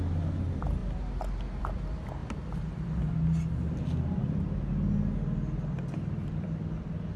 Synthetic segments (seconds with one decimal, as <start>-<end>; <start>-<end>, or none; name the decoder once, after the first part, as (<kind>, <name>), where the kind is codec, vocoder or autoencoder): none